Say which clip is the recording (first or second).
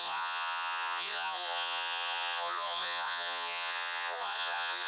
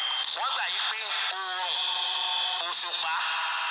second